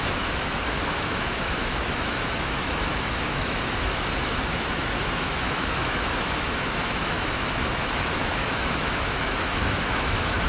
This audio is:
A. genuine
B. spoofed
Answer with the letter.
B